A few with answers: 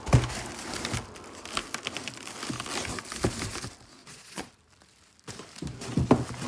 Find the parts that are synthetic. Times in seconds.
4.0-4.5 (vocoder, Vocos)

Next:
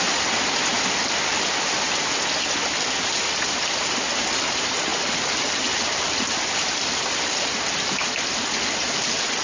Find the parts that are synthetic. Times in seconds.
none

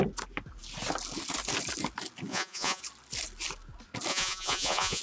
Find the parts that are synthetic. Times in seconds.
2.3-2.8 (vocoder, Vocos); 4.1-5.0

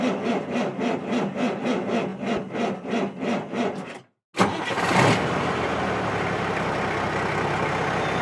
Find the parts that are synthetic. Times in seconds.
none

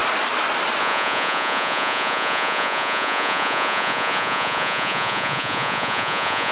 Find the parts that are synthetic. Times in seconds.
0.8-6.5 (vocoder, Vocos)

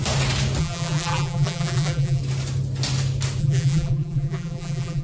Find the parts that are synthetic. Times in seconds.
0.6-2.2 (vocoder, BigVGAN v2); 3.4-5.0

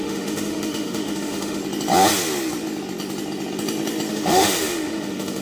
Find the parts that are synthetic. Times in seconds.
0.0-1.6 (autoencoder, DAC-VAE); 4.1-5.4

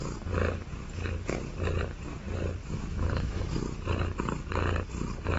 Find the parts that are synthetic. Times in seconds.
2.6-3.4 (autoencoder, DAC-VAE)